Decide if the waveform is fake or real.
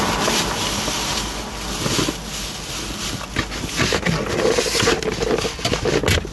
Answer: real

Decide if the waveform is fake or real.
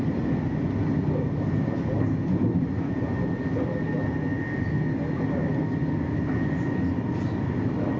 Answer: real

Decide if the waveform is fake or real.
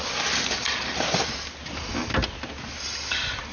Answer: real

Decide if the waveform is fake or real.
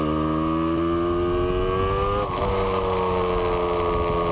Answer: real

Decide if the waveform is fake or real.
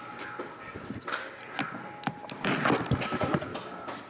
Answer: real